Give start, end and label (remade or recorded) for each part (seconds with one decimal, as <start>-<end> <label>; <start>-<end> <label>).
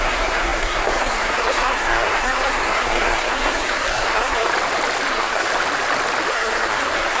0.0-4.5 remade; 4.5-5.1 recorded; 5.1-5.5 remade; 5.5-6.3 recorded; 6.3-7.2 remade